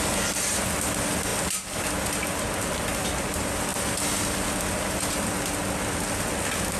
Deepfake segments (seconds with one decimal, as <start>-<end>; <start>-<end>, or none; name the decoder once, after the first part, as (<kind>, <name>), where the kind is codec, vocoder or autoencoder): none